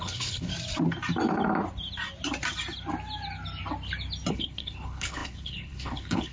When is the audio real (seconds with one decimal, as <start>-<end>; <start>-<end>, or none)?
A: 0.5-4.3